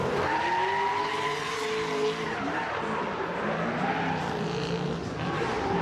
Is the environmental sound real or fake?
real